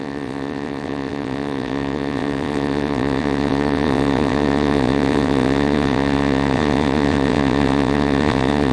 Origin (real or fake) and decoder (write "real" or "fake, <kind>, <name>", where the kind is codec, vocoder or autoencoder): fake, vocoder, WaveNeXt